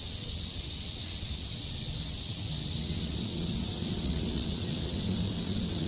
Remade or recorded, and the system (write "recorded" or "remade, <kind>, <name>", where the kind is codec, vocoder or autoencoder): remade, vocoder, WaveNeXt